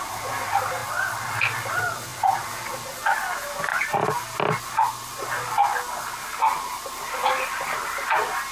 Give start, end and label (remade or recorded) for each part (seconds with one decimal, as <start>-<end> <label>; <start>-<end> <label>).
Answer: 0.0-0.8 recorded; 0.8-1.7 remade; 1.7-2.1 recorded; 2.1-2.7 remade; 2.7-8.5 recorded